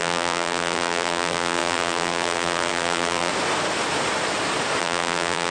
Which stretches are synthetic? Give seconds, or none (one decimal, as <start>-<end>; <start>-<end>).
0.0-3.3; 4.8-5.5